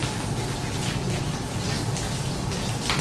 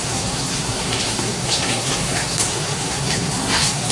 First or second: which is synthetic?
second